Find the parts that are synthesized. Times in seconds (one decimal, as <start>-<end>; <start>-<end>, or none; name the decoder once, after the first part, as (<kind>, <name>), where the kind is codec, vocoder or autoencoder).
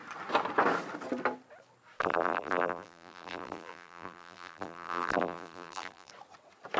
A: 2.0-6.1 (vocoder, BigVGAN v2)